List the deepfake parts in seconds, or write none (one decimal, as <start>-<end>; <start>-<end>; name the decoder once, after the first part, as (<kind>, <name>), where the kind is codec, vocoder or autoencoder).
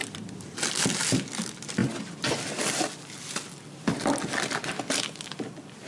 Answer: none